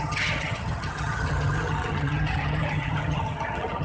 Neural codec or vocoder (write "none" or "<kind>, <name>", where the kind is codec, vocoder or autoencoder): vocoder, HiFi-GAN